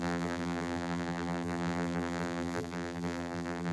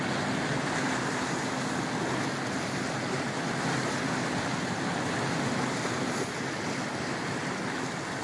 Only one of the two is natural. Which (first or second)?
second